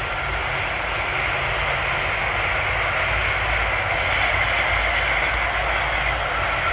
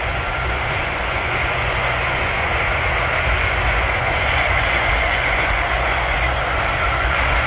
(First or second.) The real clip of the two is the first